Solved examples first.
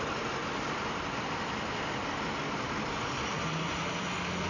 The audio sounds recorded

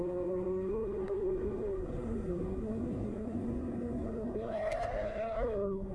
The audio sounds remade